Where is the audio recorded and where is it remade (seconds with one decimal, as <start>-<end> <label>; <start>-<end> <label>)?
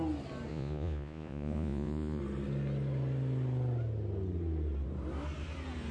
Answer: 0.0-0.5 recorded; 0.5-2.2 remade; 2.2-5.9 recorded